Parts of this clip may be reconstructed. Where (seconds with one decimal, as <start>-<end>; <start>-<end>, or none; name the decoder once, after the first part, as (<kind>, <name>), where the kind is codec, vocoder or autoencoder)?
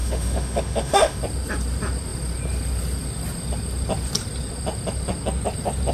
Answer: 0.0-1.2 (autoencoder, DAC-VAE)